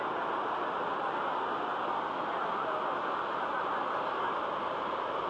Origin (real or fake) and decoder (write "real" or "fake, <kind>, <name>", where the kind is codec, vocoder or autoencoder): real